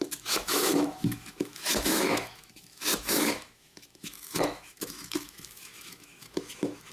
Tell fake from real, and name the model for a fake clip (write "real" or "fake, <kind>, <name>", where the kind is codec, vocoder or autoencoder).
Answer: fake, autoencoder, DAC-VAE